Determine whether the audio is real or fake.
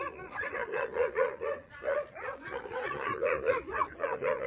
fake